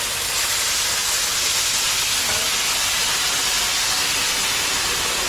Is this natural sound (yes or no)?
yes